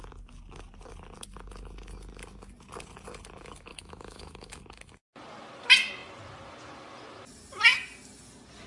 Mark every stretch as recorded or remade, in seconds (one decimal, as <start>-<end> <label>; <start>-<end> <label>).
0.0-3.7 recorded; 3.7-4.6 remade; 4.6-8.7 recorded